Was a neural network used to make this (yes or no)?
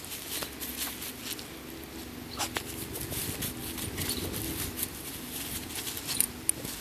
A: no